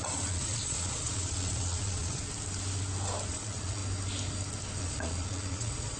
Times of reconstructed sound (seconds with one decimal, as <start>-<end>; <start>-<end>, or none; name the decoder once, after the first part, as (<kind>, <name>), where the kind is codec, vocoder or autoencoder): 0.0-2.2 (vocoder, Vocos); 3.3-3.8; 4.8-6.0